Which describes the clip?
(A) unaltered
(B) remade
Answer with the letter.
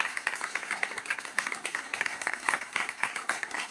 B